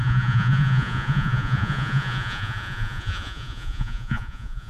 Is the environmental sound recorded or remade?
remade